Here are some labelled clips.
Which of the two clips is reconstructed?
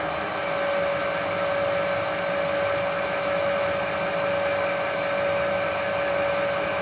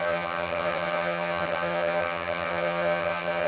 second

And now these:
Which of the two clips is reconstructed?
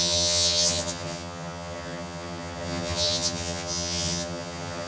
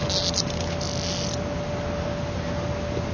first